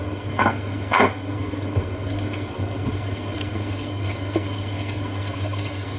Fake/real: fake